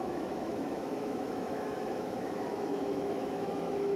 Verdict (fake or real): fake